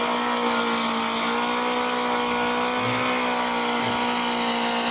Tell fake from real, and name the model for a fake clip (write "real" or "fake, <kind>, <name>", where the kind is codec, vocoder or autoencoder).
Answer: real